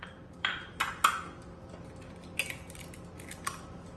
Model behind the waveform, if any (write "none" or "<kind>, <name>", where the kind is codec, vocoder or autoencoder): none